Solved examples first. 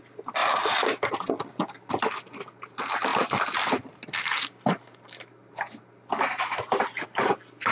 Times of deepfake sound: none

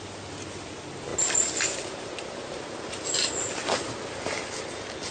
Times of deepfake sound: none

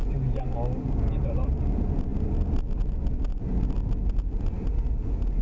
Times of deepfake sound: none

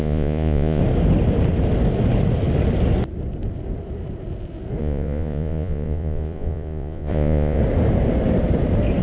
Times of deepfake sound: 0.0-0.8 (vocoder, Vocos); 4.8-7.6

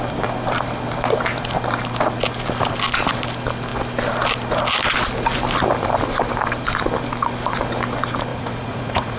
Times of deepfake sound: 8.3-9.2 (vocoder, Vocos)

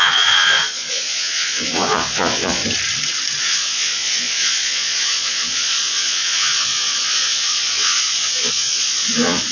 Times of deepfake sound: 0.0-2.6 (vocoder, Vocos); 3.4-9.5

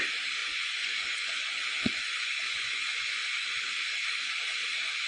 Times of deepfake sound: 0.4-3.2 (vocoder, Vocos)

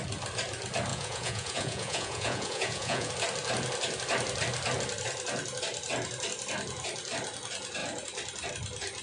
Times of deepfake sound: 0.9-3.1 (vocoder, Vocos)